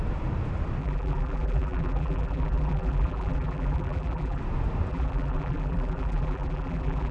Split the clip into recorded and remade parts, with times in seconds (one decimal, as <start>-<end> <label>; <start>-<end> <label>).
0.0-0.8 recorded; 0.8-4.4 remade; 4.4-4.9 recorded; 4.9-7.1 remade